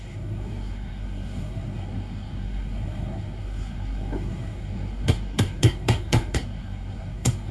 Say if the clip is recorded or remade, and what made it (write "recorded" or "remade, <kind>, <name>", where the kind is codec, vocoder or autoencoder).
remade, codec, SNAC